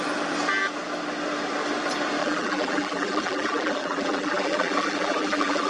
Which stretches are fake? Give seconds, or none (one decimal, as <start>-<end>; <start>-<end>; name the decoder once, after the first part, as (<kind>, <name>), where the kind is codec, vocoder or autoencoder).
2.2-5.7 (vocoder, BigVGAN v2)